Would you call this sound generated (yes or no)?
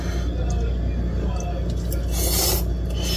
no